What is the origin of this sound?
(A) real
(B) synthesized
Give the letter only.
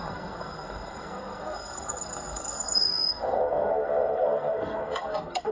B